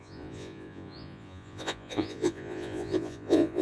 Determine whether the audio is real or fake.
fake